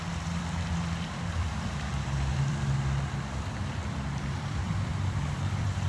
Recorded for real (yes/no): no